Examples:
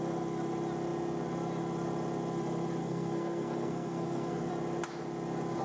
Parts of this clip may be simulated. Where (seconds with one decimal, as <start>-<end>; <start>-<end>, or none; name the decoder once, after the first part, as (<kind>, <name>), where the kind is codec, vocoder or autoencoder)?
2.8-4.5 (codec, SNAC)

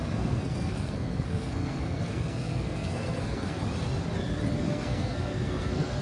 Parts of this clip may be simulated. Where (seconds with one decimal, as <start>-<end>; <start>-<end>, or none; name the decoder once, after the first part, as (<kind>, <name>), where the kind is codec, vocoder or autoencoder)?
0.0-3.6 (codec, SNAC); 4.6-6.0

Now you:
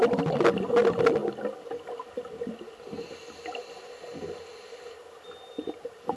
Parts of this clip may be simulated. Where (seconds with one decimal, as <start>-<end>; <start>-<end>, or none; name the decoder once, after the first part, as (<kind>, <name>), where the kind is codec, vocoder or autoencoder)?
none

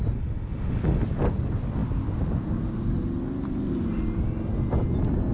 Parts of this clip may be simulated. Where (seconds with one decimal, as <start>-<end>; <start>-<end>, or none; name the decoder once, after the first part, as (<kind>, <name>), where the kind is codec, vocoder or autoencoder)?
none